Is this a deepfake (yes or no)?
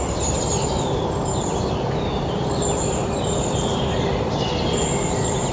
yes